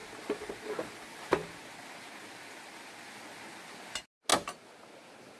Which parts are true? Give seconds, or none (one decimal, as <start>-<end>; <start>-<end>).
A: 0.0-5.4